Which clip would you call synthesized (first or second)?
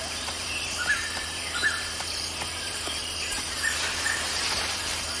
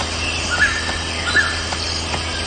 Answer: first